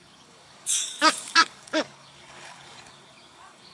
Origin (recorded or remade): remade